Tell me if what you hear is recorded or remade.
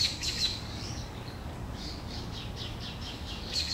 remade